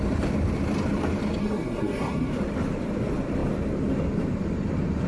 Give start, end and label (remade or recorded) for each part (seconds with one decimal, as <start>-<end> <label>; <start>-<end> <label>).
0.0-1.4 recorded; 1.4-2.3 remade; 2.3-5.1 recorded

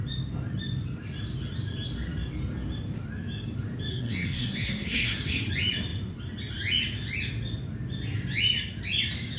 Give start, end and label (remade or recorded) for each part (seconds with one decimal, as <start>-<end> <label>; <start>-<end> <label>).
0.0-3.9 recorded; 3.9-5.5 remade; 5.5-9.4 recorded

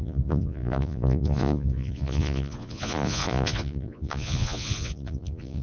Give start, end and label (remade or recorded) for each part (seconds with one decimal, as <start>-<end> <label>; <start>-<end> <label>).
0.0-5.6 remade

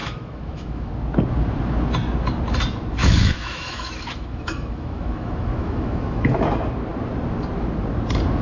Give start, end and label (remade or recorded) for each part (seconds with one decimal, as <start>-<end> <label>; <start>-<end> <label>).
0.0-0.9 remade; 0.9-3.0 recorded; 3.0-6.4 remade; 6.4-8.4 recorded

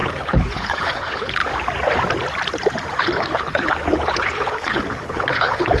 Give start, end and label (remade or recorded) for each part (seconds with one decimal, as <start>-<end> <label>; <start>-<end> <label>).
0.0-1.4 remade; 1.4-3.0 recorded; 3.0-5.8 remade

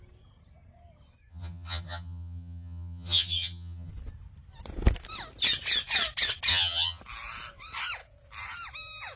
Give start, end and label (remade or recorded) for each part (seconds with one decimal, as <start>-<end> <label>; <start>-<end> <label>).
0.0-1.3 recorded; 1.3-3.9 remade; 3.9-6.5 recorded; 6.5-7.0 remade; 7.0-9.2 recorded

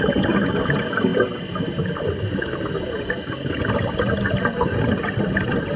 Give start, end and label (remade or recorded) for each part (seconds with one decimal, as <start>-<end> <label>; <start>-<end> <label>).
0.0-5.8 recorded

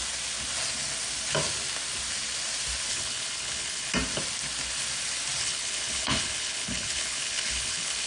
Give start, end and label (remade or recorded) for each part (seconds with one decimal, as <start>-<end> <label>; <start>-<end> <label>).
0.0-2.9 recorded; 2.9-3.9 remade; 3.9-5.4 recorded; 5.4-8.1 remade